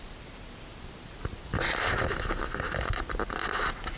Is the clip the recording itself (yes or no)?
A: yes